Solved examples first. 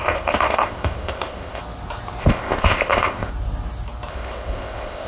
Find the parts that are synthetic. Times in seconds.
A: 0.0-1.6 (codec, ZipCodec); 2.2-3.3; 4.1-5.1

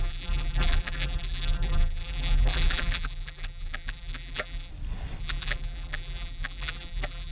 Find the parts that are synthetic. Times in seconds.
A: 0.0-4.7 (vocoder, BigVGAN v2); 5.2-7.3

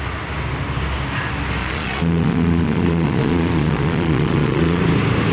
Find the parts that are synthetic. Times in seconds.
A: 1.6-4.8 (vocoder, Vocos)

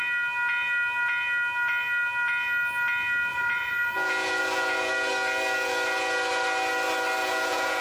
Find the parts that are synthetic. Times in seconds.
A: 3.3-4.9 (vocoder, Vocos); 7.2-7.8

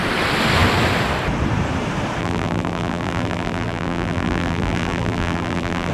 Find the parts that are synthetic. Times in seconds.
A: 2.2-5.9 (vocoder, BigVGAN v2)

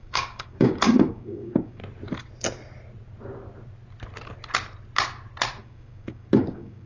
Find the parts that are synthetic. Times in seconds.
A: 0.0-1.8 (codec, DAC); 5.6-6.9